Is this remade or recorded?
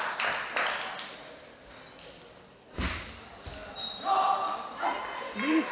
recorded